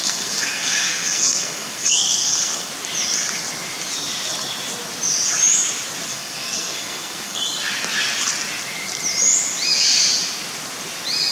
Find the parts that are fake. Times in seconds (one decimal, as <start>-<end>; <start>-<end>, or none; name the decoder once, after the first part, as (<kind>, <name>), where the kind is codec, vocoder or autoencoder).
0.0-2.7 (codec, SNAC); 6.1-7.4